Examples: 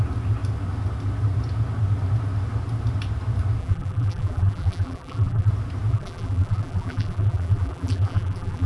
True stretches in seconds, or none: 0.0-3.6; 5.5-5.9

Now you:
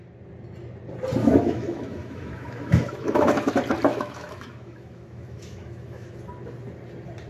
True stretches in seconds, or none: 0.0-1.2; 3.5-3.9; 6.2-7.3

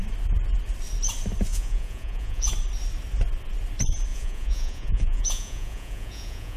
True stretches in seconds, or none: 0.0-1.5; 2.5-4.1

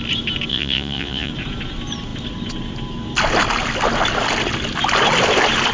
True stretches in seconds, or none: 0.0-0.5; 1.3-5.7

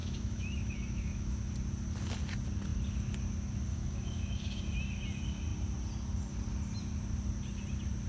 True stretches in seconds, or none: 1.5-3.7; 4.6-8.1